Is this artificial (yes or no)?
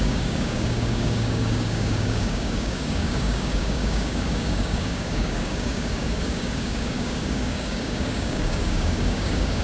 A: yes